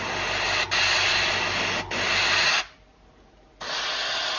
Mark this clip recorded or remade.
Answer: recorded